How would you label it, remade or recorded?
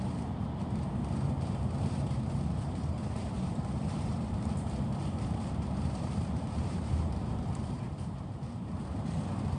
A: remade